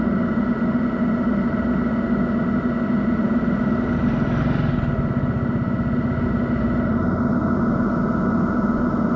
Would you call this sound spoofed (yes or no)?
no